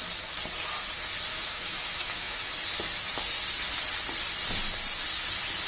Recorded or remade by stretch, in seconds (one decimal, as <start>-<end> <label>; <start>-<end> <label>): 0.0-1.3 recorded; 1.3-2.5 remade; 2.5-5.7 recorded